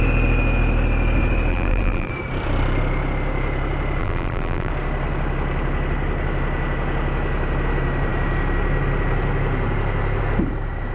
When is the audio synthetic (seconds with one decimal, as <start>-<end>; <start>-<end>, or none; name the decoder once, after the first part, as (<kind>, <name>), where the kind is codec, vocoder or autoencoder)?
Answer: 1.5-2.1 (vocoder, BigVGAN v2); 4.0-4.7